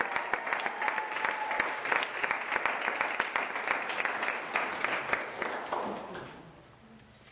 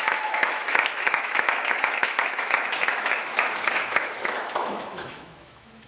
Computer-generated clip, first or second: second